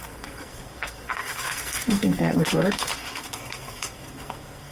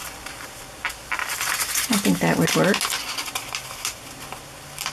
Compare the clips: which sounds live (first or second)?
second